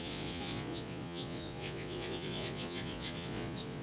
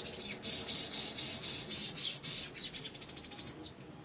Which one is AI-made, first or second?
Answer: first